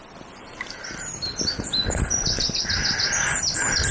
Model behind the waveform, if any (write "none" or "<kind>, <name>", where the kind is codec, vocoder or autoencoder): none